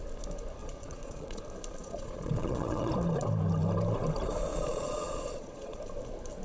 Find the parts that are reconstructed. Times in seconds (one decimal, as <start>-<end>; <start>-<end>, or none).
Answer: 0.6-1.4; 1.8-2.9; 4.5-5.8